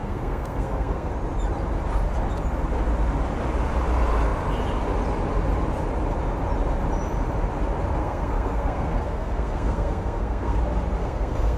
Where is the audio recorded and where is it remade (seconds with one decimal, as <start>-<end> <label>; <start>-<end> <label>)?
0.0-1.1 remade; 1.1-8.0 recorded; 8.0-10.6 remade; 10.6-11.0 recorded; 11.0-11.6 remade